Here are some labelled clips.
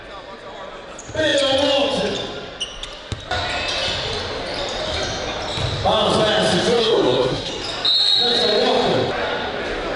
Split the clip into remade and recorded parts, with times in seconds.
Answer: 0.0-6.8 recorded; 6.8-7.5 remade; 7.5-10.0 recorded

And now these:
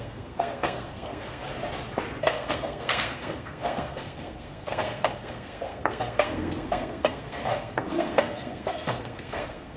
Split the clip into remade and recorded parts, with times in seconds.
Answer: 0.0-1.4 remade; 1.4-2.2 recorded; 2.2-9.8 remade

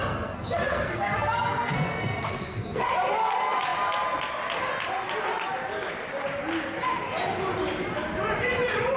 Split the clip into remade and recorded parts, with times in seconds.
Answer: 0.0-2.9 remade; 2.9-9.0 recorded